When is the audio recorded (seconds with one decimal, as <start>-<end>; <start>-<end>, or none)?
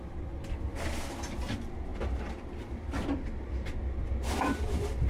0.0-1.9